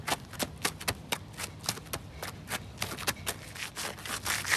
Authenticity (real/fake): real